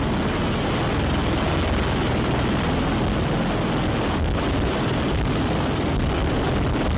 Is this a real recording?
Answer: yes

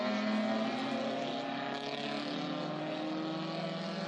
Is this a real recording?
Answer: yes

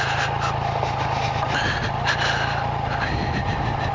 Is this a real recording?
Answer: yes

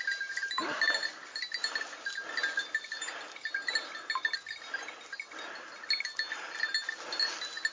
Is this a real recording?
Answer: yes